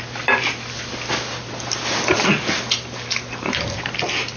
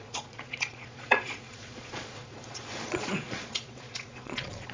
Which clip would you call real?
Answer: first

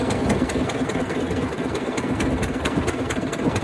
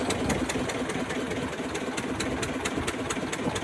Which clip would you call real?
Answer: second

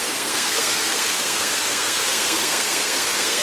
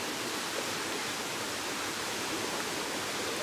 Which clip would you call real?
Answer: second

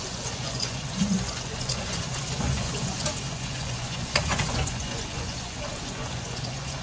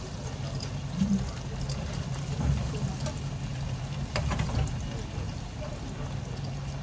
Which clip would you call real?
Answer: second